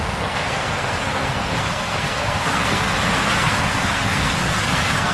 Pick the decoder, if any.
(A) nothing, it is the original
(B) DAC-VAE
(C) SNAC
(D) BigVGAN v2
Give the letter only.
C